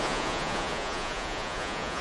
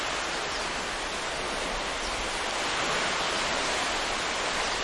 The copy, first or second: first